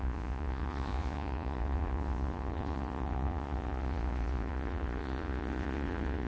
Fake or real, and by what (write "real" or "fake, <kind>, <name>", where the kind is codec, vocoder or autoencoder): fake, vocoder, Vocos